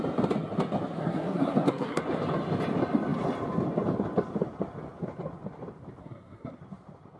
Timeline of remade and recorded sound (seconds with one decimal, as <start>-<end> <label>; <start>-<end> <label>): 0.0-1.0 recorded; 1.0-2.0 remade; 2.0-6.0 recorded; 6.0-6.6 remade; 6.6-7.2 recorded